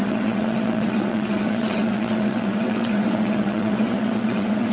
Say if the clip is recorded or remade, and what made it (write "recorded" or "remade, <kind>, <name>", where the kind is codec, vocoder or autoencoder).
remade, vocoder, WaveNeXt